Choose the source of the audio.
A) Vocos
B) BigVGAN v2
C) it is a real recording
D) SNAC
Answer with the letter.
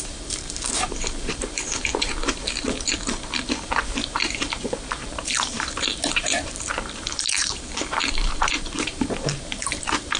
B